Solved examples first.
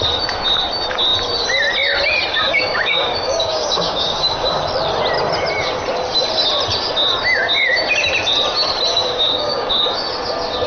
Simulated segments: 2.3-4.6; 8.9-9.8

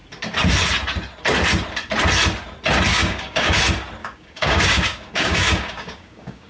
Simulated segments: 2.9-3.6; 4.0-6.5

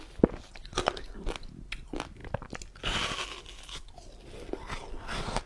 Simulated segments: none